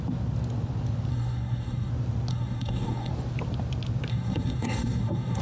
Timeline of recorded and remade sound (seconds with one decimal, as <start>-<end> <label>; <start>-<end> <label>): 0.0-1.1 recorded; 1.1-1.9 remade; 1.9-2.3 recorded; 2.3-3.1 remade; 3.1-4.1 recorded; 4.1-5.4 remade